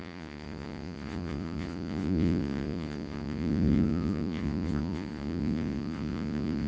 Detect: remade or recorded remade